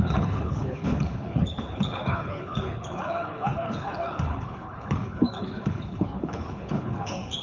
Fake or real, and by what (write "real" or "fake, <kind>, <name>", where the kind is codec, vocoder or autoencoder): fake, codec, HILCodec